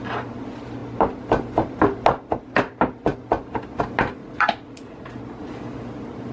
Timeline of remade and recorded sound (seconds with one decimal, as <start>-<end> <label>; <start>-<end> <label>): 0.0-4.2 recorded; 4.2-5.2 remade; 5.2-6.3 recorded